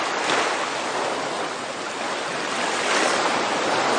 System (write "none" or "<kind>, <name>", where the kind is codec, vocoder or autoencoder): none